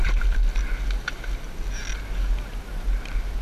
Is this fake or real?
real